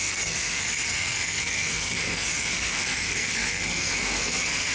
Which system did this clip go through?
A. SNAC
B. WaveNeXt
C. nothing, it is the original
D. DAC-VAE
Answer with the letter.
A